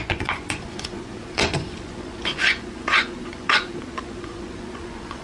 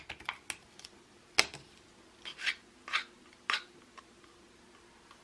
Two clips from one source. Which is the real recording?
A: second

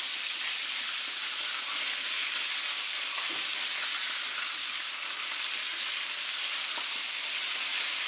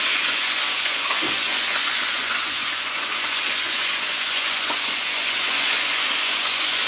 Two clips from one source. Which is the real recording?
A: first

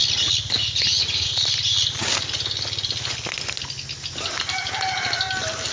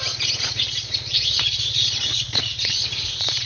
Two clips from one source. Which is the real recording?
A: first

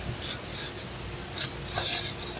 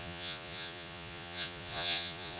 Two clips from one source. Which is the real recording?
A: first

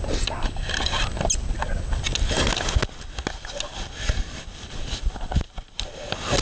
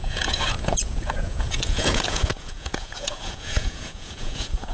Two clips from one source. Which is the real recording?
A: first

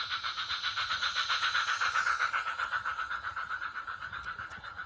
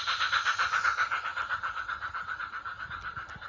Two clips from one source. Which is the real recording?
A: second